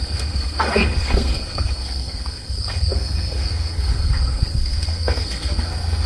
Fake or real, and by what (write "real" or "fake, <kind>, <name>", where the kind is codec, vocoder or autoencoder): fake, codec, SNAC